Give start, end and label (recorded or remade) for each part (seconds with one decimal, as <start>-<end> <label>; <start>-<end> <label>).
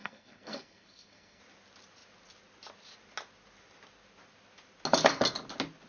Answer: 0.0-1.4 remade; 1.4-5.9 recorded